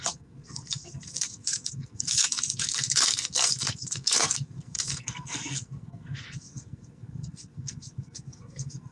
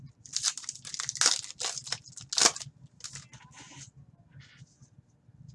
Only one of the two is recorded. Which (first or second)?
second